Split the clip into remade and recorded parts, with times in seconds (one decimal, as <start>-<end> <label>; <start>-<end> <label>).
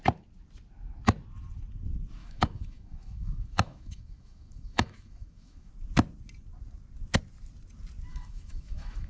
0.0-2.2 recorded; 2.2-5.7 remade; 5.7-8.1 recorded; 8.1-9.1 remade